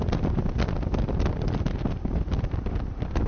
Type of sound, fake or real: fake